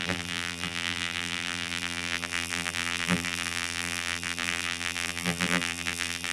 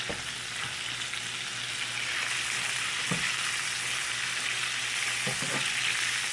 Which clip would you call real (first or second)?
second